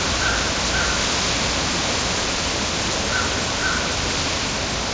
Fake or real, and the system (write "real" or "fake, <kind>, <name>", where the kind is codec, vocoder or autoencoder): real